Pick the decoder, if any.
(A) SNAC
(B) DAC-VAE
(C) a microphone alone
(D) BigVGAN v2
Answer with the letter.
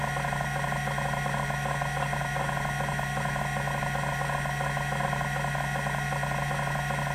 C